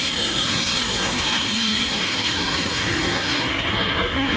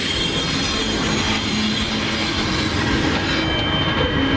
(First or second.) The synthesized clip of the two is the first